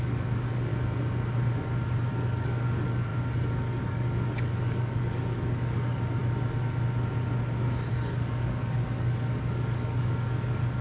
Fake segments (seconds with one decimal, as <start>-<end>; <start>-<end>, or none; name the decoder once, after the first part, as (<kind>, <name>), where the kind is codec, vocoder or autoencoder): 0.0-0.7 (codec, DAC); 2.1-6.2; 7.9-10.8